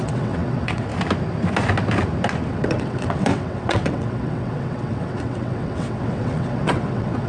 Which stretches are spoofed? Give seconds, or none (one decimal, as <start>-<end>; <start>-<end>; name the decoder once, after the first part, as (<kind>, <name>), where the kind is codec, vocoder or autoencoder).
0.0-0.9 (vocoder, WaveNeXt); 2.5-7.3